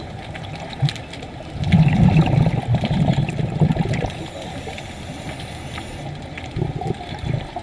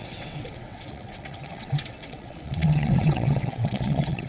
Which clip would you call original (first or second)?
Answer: first